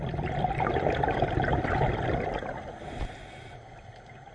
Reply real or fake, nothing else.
real